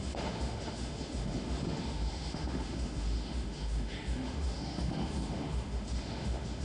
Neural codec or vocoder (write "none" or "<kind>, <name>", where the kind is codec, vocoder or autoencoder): autoencoder, DAC-VAE